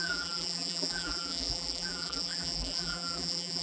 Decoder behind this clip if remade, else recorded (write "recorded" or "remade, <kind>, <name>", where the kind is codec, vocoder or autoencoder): remade, vocoder, BigVGAN v2